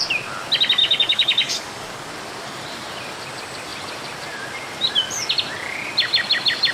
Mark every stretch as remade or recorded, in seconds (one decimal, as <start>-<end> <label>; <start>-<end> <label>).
0.0-0.8 recorded; 0.8-2.1 remade; 2.1-6.7 recorded